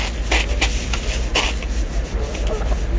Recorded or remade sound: recorded